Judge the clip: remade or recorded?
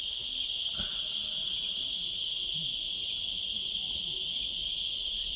remade